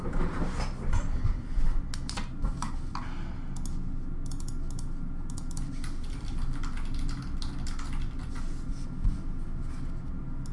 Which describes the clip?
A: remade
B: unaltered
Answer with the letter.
B